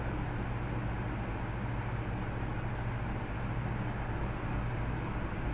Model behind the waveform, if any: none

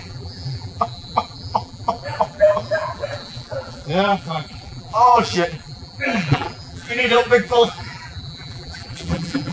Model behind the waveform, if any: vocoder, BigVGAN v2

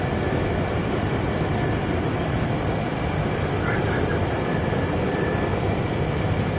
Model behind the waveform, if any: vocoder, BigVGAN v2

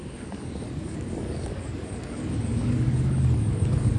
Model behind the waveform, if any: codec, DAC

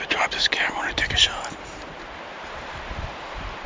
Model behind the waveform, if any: vocoder, BigVGAN v2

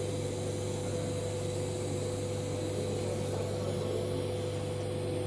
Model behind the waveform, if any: none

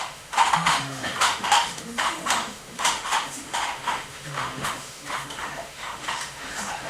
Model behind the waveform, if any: autoencoder, DAC-VAE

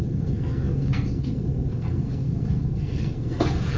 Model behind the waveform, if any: codec, SNAC